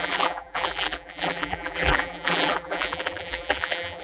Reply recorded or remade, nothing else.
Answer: remade